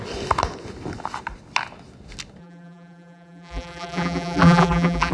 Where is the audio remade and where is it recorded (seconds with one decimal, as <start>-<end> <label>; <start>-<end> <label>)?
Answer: 0.0-2.4 recorded; 2.4-5.1 remade